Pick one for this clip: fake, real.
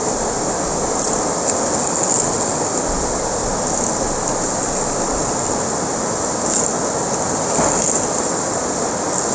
real